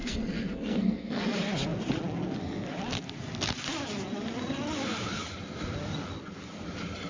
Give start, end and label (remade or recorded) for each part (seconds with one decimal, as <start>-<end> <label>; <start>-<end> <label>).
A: 0.0-1.2 remade; 1.2-7.1 recorded